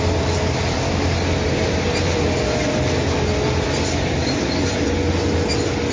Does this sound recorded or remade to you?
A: recorded